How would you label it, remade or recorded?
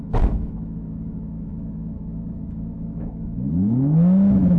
remade